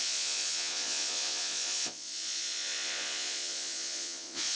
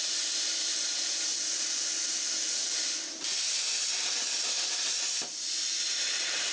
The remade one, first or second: first